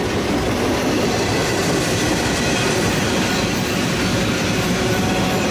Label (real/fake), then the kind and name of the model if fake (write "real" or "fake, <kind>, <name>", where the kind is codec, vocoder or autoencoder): real